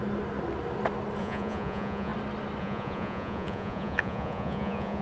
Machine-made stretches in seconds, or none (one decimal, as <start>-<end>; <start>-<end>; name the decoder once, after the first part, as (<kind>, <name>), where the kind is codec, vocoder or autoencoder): 1.2-2.1 (vocoder, Vocos); 2.6-5.0